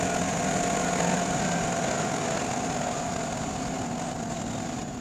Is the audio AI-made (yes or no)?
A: no